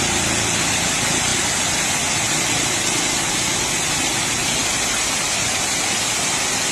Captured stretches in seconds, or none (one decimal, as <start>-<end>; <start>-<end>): 0.0-6.7